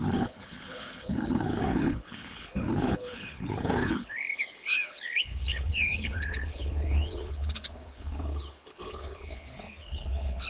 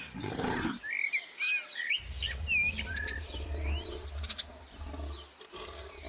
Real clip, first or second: second